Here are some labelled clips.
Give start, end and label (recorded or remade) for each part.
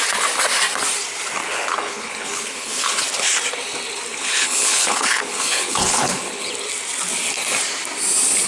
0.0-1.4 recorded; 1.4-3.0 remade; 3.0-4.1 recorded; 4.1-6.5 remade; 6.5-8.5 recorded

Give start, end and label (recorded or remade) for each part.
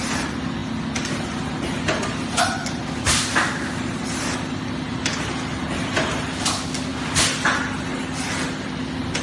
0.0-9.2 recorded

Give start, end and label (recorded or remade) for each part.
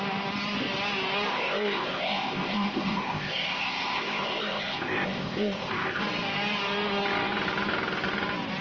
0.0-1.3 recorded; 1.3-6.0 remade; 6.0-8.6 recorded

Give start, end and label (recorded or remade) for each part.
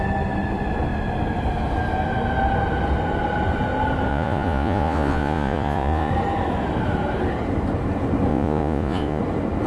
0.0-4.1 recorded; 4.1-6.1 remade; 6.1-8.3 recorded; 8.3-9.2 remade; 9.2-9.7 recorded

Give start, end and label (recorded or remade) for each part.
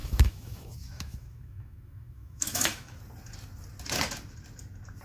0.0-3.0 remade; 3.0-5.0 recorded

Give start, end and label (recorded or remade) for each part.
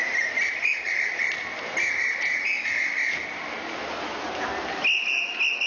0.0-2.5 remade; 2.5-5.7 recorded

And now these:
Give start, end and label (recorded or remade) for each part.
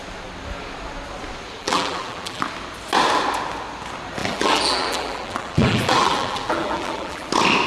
0.0-1.6 recorded; 1.6-2.4 remade; 2.4-4.2 recorded; 4.2-7.3 remade; 7.3-7.7 recorded